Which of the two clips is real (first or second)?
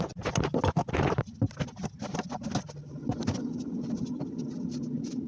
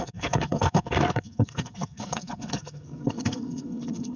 first